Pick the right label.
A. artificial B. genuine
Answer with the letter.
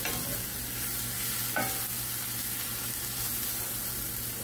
B